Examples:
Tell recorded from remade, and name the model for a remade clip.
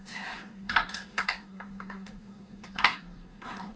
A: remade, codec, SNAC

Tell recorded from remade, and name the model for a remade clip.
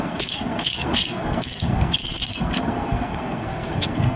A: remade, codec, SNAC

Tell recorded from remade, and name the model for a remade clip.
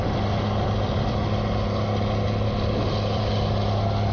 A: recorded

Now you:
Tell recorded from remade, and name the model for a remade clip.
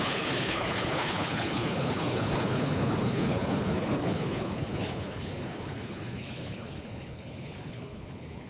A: remade, codec, HILCodec